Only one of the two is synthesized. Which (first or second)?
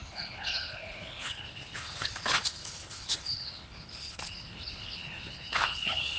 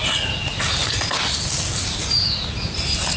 first